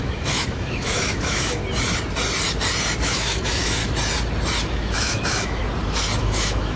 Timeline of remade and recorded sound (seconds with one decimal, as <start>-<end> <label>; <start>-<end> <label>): 0.0-1.6 remade; 1.6-3.0 recorded; 3.0-3.8 remade; 3.8-4.6 recorded; 4.6-5.6 remade; 5.6-6.2 recorded; 6.2-6.8 remade